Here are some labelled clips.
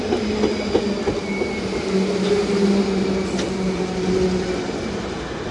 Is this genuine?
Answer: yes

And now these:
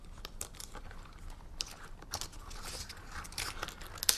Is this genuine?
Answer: yes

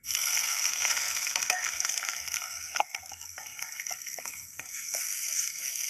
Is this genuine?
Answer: no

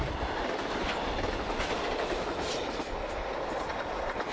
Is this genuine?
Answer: yes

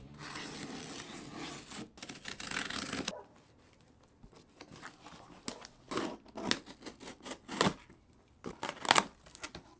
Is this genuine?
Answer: yes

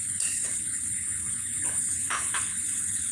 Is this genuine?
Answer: no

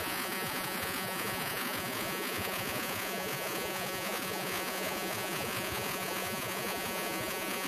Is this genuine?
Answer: no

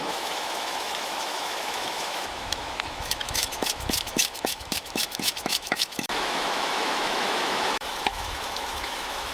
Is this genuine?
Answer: no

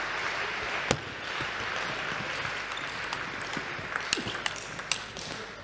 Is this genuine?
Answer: yes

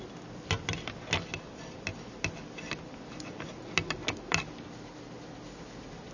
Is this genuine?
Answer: yes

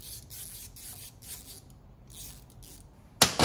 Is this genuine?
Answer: yes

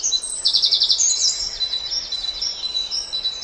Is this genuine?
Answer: yes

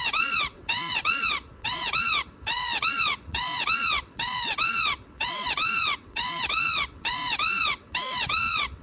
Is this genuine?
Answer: no